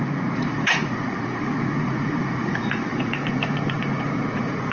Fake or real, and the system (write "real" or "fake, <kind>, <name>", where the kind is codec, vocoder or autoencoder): fake, vocoder, Vocos